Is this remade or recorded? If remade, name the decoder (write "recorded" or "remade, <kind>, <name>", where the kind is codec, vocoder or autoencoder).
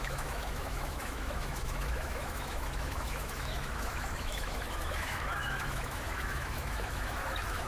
remade, autoencoder, DAC-VAE